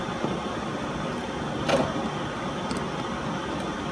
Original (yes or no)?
yes